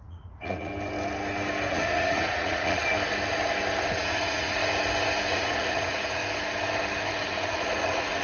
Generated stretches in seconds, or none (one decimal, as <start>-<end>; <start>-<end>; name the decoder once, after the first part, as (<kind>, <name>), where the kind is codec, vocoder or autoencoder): 0.0-0.7 (vocoder, Vocos); 1.7-2.8; 3.8-4.6; 5.3-6.2; 7.2-8.2